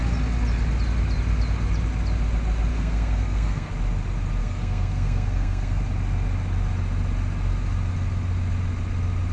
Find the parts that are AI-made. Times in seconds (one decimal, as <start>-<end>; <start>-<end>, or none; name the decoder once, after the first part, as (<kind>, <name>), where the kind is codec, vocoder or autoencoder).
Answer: 2.7-3.7 (codec, SNAC); 4.4-5.8

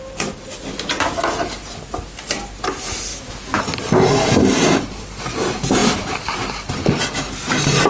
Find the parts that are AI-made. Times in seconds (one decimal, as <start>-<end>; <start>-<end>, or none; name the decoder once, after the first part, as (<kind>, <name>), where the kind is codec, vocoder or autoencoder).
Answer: 3.1-3.6 (autoencoder, DAC-VAE)

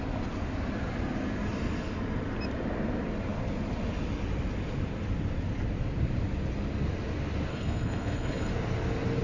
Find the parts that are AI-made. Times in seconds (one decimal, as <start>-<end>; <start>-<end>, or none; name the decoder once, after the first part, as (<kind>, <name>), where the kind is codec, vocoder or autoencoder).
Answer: 7.5-8.5 (codec, HILCodec)

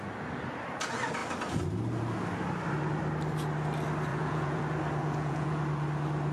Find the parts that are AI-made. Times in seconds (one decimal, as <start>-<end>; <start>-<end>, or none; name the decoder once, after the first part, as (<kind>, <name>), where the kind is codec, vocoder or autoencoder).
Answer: 4.1-4.6 (vocoder, Vocos); 5.0-5.6

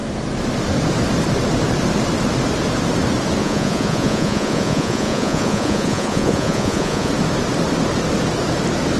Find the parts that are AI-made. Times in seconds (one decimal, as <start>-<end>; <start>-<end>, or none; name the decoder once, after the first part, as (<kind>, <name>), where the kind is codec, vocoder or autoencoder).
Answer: 3.4-7.1 (vocoder, Vocos)